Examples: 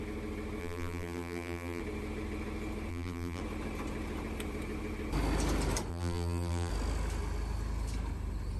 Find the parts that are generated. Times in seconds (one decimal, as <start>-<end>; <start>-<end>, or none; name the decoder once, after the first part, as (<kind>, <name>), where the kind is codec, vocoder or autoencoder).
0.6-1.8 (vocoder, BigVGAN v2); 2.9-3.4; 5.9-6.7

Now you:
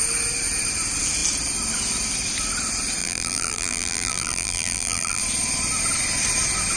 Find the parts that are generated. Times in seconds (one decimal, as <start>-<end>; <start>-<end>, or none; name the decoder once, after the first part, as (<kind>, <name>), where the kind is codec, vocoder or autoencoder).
3.0-5.2 (vocoder, BigVGAN v2)

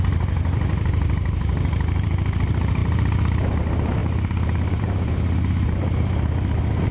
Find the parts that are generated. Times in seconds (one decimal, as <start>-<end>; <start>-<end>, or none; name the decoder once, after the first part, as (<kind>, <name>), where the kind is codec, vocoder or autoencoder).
0.0-6.9 (vocoder, BigVGAN v2)

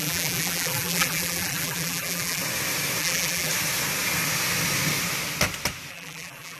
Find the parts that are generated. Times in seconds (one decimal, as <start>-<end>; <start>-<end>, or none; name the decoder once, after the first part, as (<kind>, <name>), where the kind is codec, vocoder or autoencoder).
0.0-2.4 (vocoder, BigVGAN v2); 3.0-3.5; 5.9-6.6